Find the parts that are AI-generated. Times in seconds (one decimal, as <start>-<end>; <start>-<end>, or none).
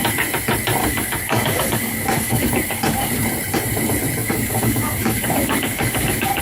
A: 0.8-3.1; 4.2-6.4